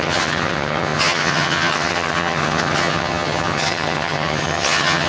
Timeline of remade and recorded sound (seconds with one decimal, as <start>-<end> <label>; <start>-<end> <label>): 0.0-5.1 remade